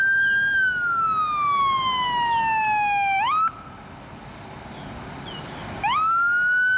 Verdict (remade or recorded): recorded